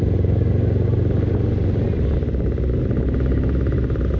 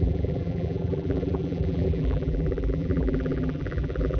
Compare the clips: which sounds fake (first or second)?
second